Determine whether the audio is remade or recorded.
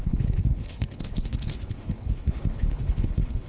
remade